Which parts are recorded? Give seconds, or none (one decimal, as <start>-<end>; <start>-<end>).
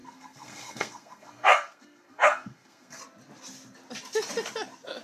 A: 3.0-5.0